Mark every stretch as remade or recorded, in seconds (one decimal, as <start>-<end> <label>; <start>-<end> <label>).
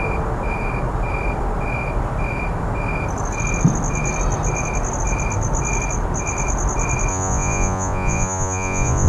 0.0-7.1 recorded; 7.1-9.1 remade